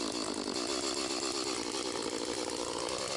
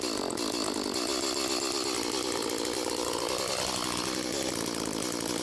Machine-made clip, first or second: first